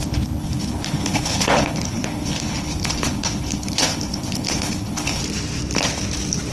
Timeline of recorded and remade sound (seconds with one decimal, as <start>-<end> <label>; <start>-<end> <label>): 0.0-5.2 remade; 5.2-6.5 recorded